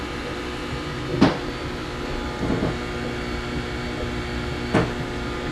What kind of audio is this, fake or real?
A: real